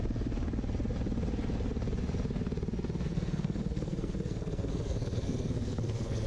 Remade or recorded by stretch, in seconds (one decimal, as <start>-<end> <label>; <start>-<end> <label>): 0.0-3.1 recorded; 3.1-6.3 remade